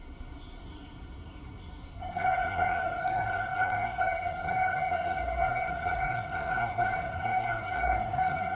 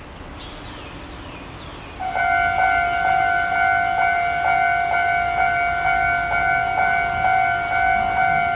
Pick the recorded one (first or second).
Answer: second